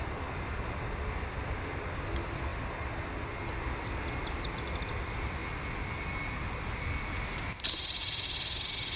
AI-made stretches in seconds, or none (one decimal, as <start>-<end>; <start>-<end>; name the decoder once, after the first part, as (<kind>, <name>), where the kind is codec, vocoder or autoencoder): 0.0-2.5 (vocoder, BigVGAN v2); 3.5-5.4; 7.5-9.0